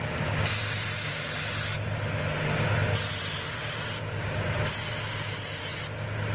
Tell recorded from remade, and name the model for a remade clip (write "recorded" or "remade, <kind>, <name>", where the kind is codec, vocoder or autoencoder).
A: recorded